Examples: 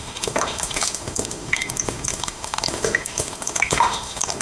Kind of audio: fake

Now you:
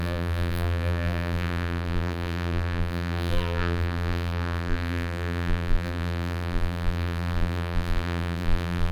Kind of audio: fake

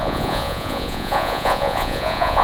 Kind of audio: fake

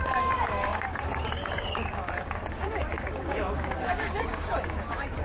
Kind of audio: fake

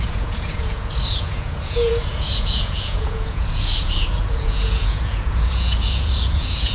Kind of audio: fake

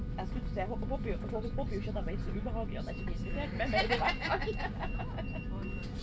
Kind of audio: real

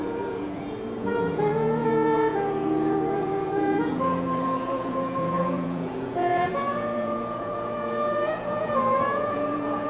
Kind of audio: fake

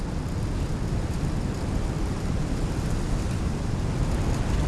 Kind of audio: real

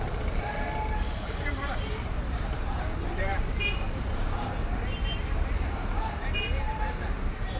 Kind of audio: fake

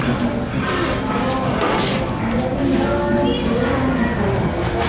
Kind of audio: real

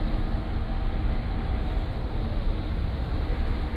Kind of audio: real